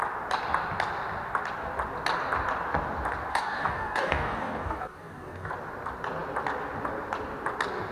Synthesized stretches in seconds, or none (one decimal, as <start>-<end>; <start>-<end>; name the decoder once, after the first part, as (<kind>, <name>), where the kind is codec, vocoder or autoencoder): 3.3-5.5 (codec, DAC)